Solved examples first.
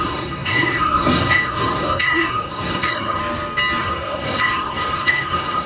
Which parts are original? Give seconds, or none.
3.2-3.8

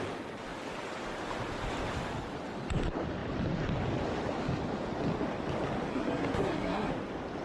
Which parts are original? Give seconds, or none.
0.0-5.9; 6.9-7.4

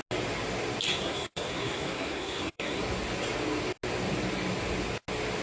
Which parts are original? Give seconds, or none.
0.0-0.9; 2.8-5.4

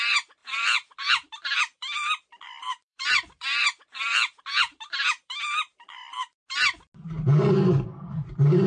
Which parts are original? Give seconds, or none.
0.0-0.4; 3.6-4.7; 5.3-8.7

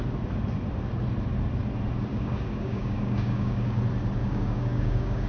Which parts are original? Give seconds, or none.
0.0-2.1; 3.8-4.2